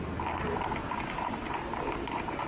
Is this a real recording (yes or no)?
yes